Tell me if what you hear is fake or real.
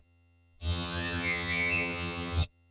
fake